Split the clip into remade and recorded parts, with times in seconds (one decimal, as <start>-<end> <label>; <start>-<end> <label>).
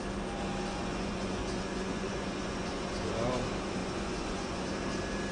0.0-0.7 recorded; 0.7-3.1 remade; 3.1-3.8 recorded; 3.8-4.7 remade; 4.7-5.3 recorded